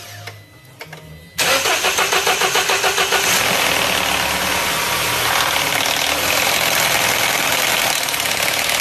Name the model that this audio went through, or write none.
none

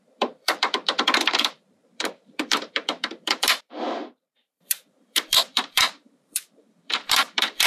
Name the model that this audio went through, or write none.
vocoder, BigVGAN v2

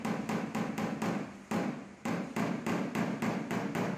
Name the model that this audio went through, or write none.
vocoder, BigVGAN v2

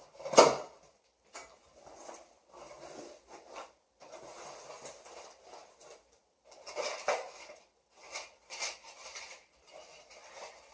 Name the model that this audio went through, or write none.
vocoder, BigVGAN v2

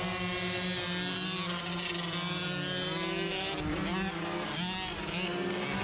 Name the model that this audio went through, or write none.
none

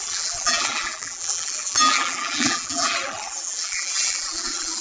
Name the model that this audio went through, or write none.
vocoder, BigVGAN v2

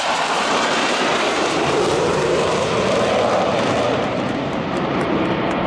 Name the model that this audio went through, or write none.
vocoder, BigVGAN v2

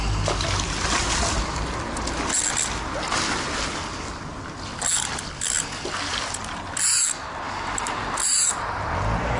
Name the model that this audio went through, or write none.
none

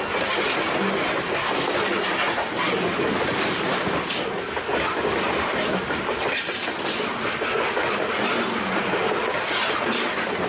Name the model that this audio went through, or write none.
none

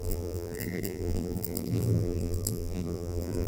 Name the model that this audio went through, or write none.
vocoder, BigVGAN v2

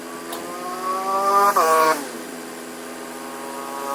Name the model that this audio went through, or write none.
none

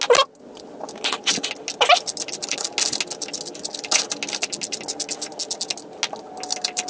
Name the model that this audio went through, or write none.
none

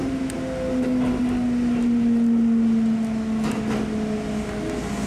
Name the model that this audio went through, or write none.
none